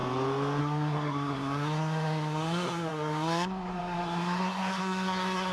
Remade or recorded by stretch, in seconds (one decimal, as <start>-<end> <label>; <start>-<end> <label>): 0.0-0.6 recorded; 0.6-5.5 remade